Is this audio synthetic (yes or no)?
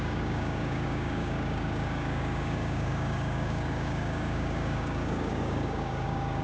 yes